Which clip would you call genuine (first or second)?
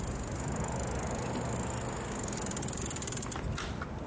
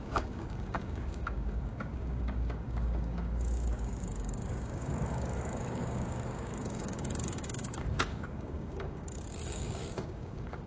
first